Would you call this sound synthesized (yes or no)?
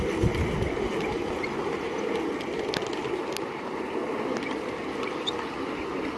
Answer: no